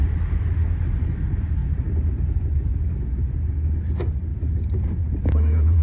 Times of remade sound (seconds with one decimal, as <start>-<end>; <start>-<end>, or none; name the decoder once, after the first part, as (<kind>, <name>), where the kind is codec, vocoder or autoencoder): 0.0-0.8 (vocoder, BigVGAN v2); 1.6-2.7; 4.3-5.8